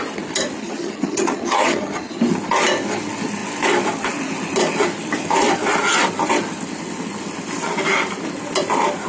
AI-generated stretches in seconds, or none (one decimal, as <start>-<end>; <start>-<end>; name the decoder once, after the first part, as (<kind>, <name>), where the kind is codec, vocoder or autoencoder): 0.6-2.2 (vocoder, HiFi-GAN)